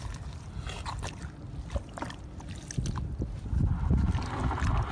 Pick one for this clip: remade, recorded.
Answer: recorded